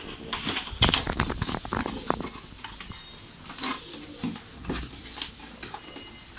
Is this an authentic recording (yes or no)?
yes